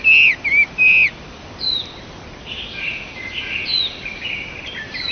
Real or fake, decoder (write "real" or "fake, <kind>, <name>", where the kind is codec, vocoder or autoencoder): real